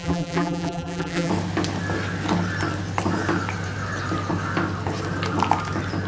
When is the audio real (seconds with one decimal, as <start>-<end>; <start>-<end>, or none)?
1.3-6.1